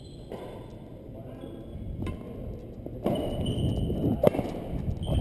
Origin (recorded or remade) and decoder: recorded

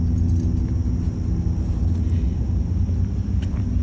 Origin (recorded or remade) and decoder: recorded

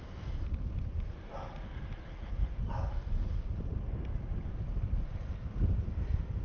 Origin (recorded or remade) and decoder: recorded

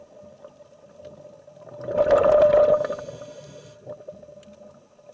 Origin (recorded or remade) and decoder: recorded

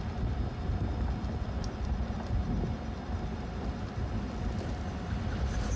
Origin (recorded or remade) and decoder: recorded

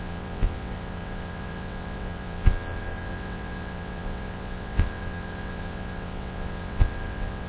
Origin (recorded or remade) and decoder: remade, vocoder, WaveNeXt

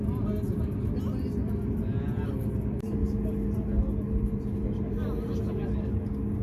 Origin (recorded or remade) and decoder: recorded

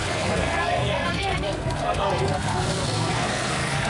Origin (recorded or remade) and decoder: remade, codec, SNAC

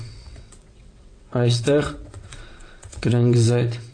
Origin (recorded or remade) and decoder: remade, vocoder, WaveNeXt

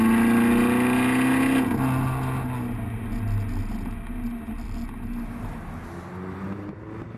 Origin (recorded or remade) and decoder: recorded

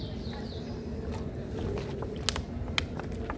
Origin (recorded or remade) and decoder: recorded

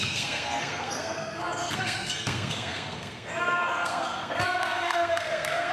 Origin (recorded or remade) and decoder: remade, codec, SNAC